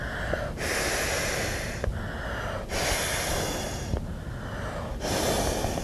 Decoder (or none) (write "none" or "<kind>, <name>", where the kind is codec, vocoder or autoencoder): none